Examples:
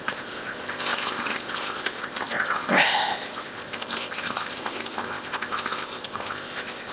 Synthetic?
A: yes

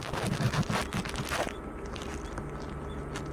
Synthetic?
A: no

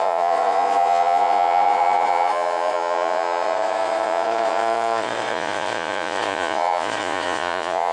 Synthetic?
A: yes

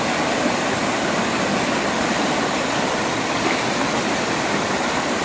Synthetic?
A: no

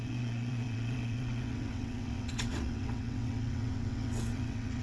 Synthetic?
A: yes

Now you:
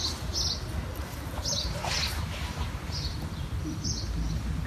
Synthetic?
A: no